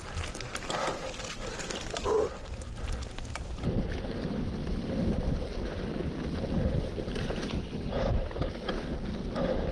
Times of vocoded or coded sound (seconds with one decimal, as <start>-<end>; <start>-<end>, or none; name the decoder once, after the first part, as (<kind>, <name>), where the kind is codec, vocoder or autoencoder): none